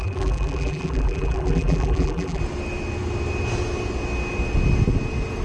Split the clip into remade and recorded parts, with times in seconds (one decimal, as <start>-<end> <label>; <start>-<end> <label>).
0.0-2.4 remade; 2.4-5.4 recorded